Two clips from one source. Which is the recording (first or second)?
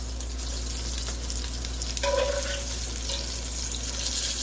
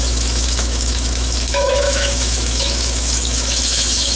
first